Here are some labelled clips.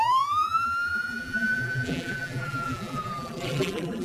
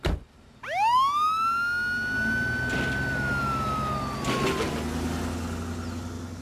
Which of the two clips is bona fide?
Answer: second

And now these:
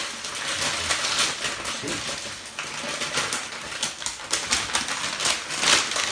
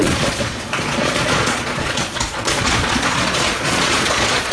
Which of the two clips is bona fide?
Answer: first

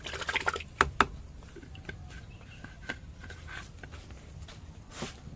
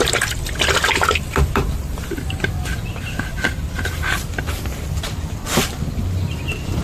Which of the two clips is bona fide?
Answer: first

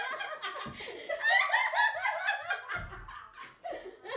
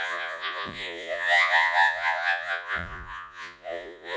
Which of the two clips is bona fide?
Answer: first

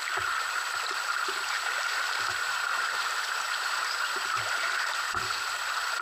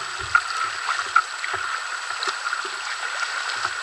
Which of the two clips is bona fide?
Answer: second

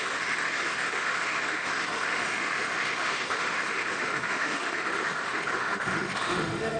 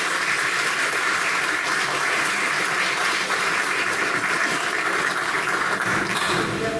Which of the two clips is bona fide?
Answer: second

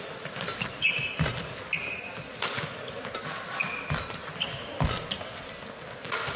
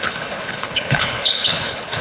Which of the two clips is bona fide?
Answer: first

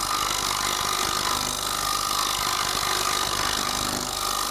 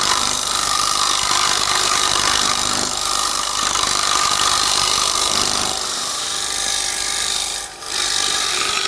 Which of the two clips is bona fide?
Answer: first